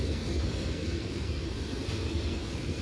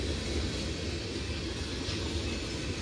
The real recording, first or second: second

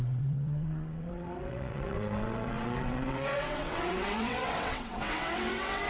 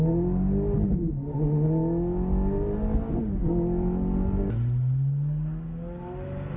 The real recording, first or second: second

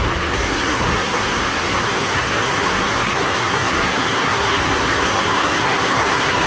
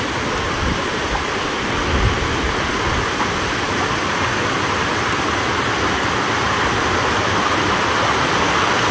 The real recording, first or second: second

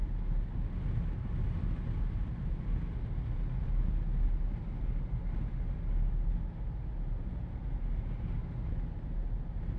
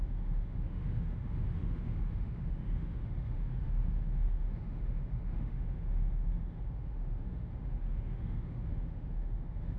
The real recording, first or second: first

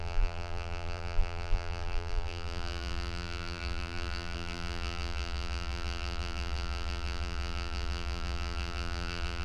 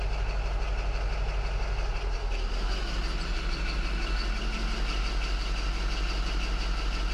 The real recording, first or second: second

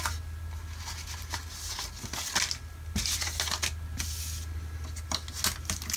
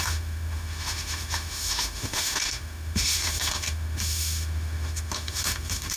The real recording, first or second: first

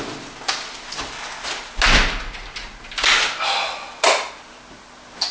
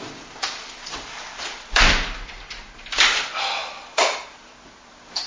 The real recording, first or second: first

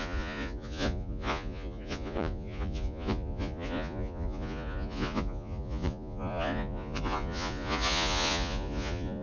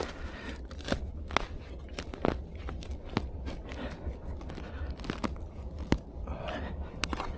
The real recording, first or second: second